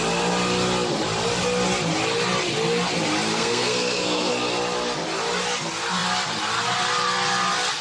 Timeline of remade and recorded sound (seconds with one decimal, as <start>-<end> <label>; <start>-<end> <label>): 0.0-3.3 recorded; 3.3-4.3 remade; 4.3-7.8 recorded